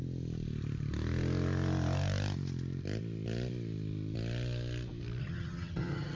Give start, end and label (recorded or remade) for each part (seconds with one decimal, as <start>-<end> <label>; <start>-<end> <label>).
0.0-5.2 recorded; 5.2-6.2 remade